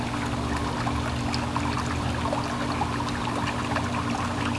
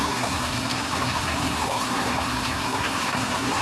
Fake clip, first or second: second